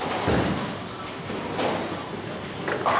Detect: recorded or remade recorded